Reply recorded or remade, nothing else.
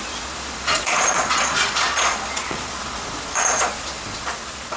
remade